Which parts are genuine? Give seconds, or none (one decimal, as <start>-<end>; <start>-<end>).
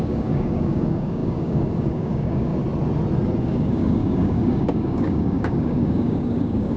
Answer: 2.5-3.4